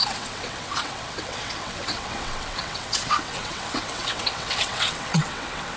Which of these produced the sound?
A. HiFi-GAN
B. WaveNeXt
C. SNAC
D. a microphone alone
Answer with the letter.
B